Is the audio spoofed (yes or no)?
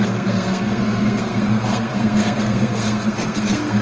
yes